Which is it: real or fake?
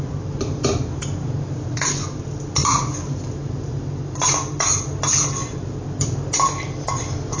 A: real